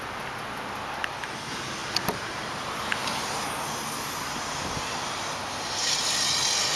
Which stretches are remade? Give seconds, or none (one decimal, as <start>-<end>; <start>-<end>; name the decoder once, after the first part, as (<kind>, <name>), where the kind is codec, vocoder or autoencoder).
none

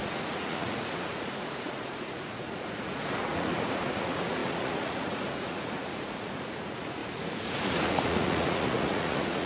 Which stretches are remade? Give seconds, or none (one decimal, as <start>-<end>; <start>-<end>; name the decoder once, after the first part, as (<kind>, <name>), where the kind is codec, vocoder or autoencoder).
0.0-9.5 (vocoder, Vocos)

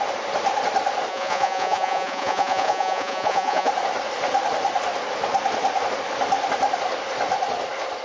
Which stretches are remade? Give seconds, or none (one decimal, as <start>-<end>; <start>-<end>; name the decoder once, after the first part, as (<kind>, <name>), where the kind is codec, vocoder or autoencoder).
1.1-3.7 (vocoder, Vocos)

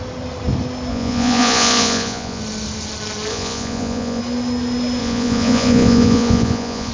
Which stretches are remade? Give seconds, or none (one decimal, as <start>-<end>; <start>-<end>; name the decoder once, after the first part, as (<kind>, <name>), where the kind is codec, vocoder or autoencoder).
0.9-2.4 (vocoder, Vocos); 3.3-4.2; 5.0-6.9

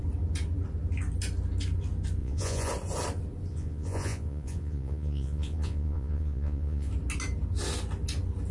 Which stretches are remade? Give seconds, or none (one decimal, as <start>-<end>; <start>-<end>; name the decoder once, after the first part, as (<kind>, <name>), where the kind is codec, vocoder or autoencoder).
2.2-2.7 (vocoder, Vocos); 3.5-6.9

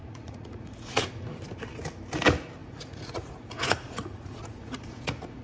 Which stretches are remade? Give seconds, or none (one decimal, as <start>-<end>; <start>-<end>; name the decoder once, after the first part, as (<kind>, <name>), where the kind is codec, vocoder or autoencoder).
0.0-1.1 (vocoder, Vocos); 2.6-5.4

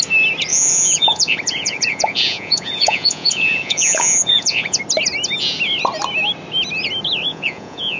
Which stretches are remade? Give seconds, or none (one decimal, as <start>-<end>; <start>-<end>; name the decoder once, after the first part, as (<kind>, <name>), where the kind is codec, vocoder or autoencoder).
0.5-4.8 (vocoder, Vocos); 7.3-8.0

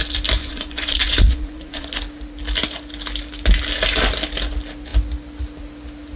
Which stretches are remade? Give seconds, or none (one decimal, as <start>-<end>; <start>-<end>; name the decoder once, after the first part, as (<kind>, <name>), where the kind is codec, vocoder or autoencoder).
0.4-2.0 (vocoder, Vocos)